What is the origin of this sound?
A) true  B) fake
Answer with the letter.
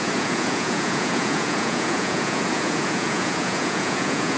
B